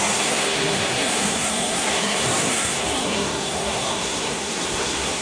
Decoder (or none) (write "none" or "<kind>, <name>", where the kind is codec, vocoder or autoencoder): codec, SNAC